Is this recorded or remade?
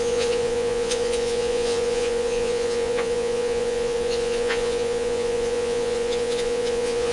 remade